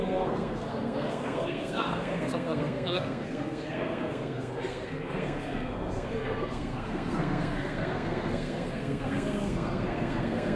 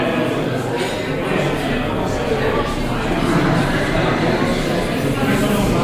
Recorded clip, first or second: second